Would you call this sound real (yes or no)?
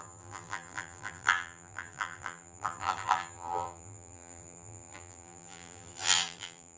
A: no